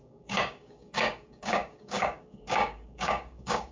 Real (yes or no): no